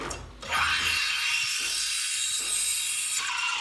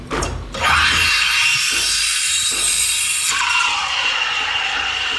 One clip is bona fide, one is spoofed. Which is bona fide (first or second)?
first